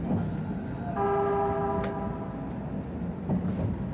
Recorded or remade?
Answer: recorded